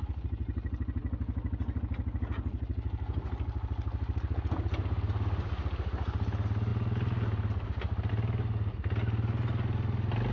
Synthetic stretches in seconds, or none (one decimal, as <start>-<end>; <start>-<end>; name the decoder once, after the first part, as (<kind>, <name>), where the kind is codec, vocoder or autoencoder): none